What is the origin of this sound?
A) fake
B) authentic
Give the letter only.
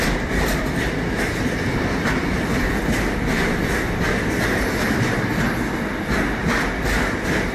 B